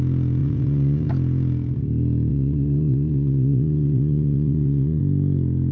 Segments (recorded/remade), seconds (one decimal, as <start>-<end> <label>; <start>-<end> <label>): 0.0-0.4 recorded; 0.4-1.1 remade; 1.1-2.3 recorded; 2.3-5.0 remade; 5.0-5.7 recorded